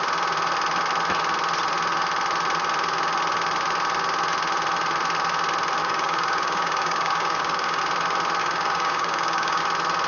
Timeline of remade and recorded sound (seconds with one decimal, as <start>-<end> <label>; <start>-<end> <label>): 0.0-5.8 recorded; 5.8-7.8 remade; 7.8-8.4 recorded; 8.4-9.6 remade; 9.6-10.1 recorded